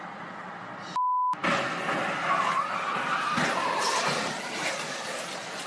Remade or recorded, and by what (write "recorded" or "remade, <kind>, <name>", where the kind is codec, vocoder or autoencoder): recorded